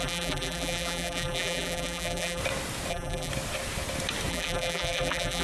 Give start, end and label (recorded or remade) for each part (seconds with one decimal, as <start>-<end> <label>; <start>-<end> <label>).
0.0-2.4 remade; 2.4-2.9 recorded; 2.9-3.3 remade; 3.3-4.3 recorded; 4.3-5.4 remade